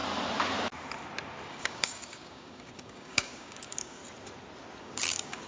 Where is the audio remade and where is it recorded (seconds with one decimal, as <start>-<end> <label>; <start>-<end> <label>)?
0.0-1.5 recorded; 1.5-4.0 remade; 4.0-4.8 recorded; 4.8-5.5 remade